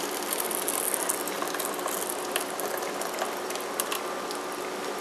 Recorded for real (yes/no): yes